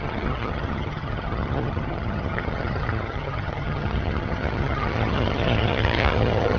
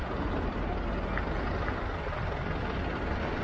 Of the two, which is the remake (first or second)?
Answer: first